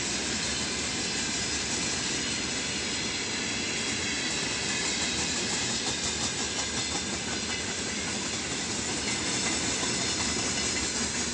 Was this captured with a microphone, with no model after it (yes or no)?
yes